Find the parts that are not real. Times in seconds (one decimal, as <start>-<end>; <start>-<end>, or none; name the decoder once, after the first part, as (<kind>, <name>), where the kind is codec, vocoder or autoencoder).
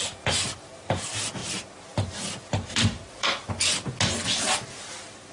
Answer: 1.4-3.5 (vocoder, BigVGAN v2)